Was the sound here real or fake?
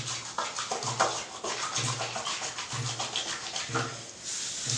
real